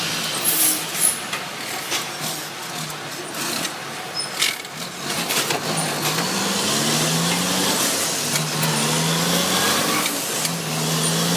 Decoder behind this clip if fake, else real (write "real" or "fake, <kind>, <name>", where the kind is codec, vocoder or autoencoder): real